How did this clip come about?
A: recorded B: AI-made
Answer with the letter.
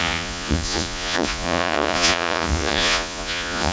B